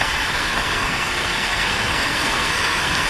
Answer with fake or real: fake